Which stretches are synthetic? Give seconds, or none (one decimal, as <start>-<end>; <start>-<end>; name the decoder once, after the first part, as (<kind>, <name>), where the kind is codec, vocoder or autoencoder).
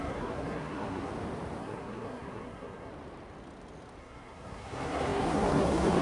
0.0-1.1 (codec, SNAC); 1.6-2.9; 4.0-6.0